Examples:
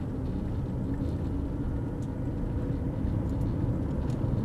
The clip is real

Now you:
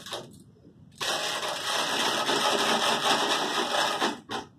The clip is real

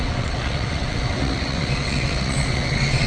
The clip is fake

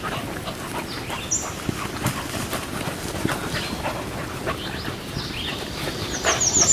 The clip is real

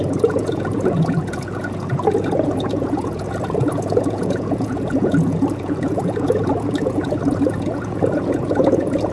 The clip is fake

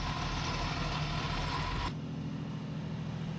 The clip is real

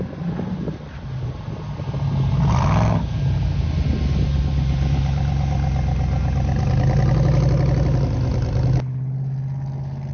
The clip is real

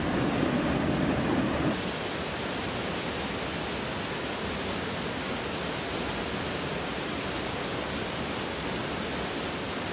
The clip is real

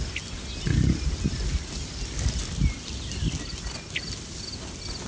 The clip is real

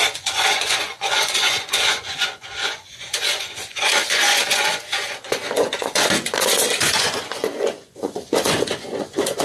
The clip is fake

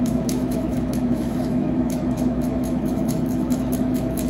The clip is fake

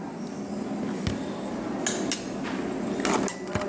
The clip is real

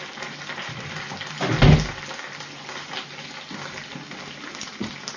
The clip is real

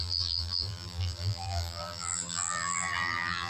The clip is fake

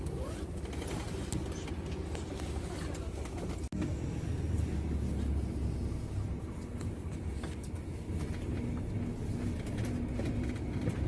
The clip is real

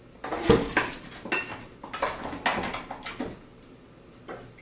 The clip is real